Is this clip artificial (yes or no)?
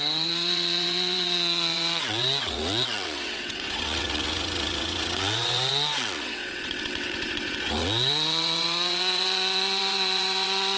yes